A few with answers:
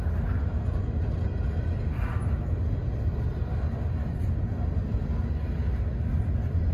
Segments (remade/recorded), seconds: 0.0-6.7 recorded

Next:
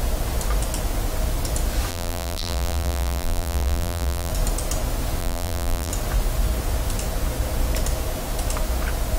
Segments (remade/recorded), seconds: 0.0-1.9 recorded; 1.9-4.3 remade; 4.3-5.2 recorded; 5.2-5.9 remade; 5.9-9.2 recorded

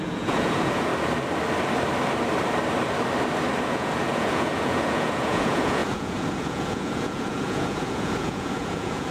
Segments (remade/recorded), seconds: 0.0-0.9 remade; 0.9-3.6 recorded; 3.6-9.1 remade

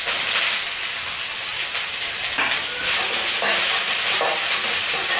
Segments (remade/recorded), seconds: 0.0-5.2 recorded

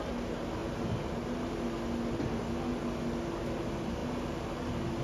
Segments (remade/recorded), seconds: 0.0-5.0 recorded